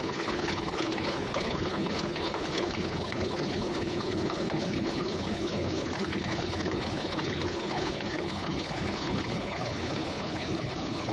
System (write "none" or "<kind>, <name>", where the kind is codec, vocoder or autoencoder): codec, HILCodec